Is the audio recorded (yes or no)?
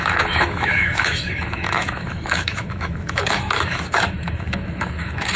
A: no